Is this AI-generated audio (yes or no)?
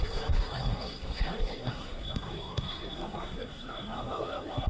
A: yes